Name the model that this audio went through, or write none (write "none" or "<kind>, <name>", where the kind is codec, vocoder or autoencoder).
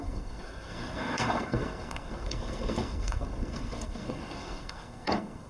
codec, SNAC